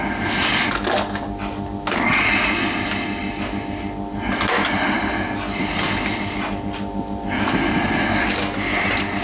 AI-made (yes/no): no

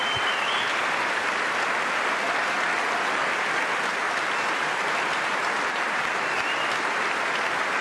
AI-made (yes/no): no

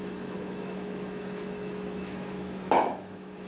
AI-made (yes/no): yes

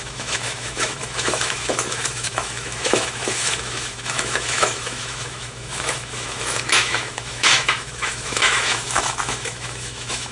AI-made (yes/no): yes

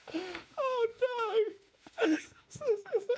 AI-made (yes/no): yes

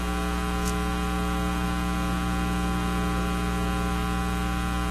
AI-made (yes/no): no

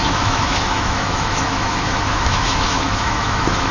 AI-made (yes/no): yes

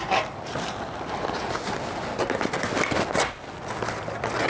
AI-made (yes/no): no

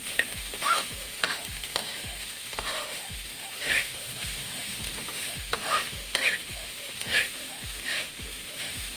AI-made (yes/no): yes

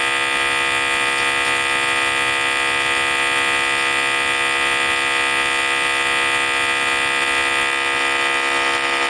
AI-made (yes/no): no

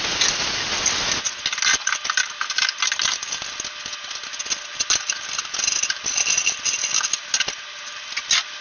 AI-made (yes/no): no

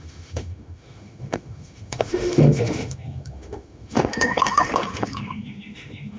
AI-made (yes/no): yes